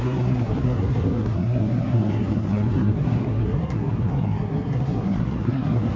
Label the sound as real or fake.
fake